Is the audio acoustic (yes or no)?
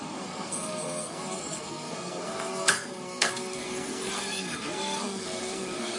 no